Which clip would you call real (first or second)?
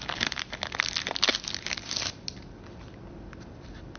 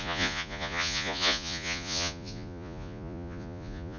first